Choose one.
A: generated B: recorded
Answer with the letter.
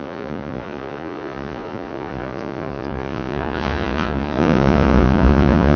A